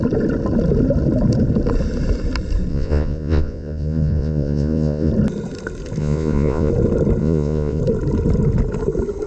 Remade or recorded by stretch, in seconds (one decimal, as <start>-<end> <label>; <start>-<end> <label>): 0.0-2.7 recorded; 2.7-5.1 remade; 5.1-6.0 recorded; 6.0-6.7 remade; 6.7-7.2 recorded; 7.2-7.8 remade; 7.8-9.3 recorded